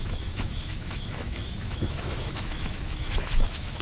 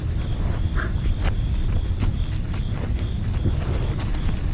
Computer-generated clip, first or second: first